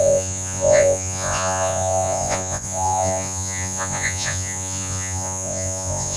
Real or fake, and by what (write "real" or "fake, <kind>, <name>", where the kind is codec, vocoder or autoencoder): fake, vocoder, Vocos